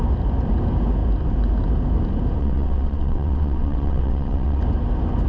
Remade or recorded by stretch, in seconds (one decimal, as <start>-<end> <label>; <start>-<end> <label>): 0.0-2.4 recorded; 2.4-4.6 remade; 4.6-5.3 recorded